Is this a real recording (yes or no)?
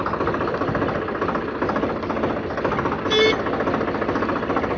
yes